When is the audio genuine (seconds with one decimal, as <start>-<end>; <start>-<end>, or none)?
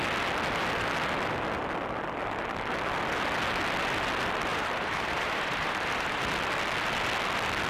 0.0-4.5; 6.2-7.7